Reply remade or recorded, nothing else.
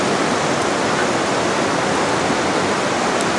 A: recorded